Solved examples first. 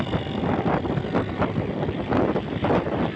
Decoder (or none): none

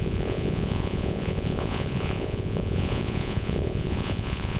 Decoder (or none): vocoder, Vocos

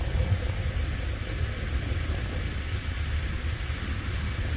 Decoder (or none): none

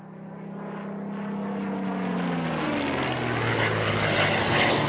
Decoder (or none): none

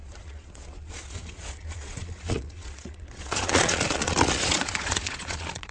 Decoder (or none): vocoder, Vocos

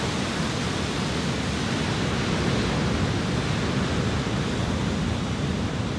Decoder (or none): none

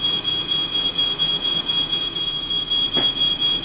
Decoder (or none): vocoder, Vocos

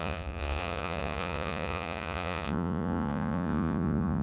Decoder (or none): vocoder, Vocos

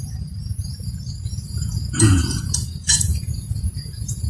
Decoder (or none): vocoder, Vocos